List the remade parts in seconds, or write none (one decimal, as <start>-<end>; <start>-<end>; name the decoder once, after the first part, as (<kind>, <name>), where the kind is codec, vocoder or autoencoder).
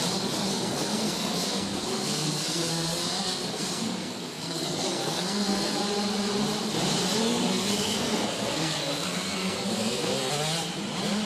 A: 0.5-5.8 (codec, SNAC); 7.2-10.3